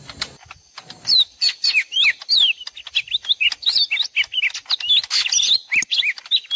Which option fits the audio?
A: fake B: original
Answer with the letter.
B